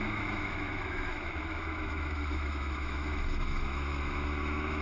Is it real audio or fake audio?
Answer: fake